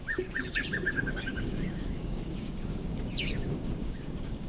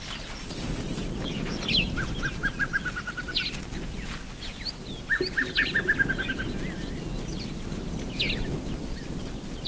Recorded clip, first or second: second